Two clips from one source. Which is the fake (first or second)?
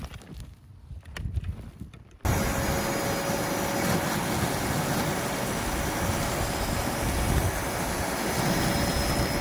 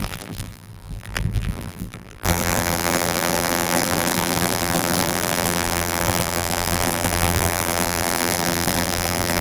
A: second